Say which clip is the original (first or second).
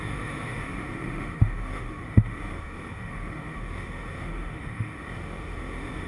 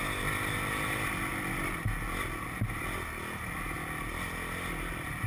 second